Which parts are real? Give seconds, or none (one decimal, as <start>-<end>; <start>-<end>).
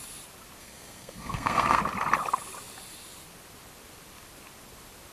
0.0-0.6; 1.8-5.1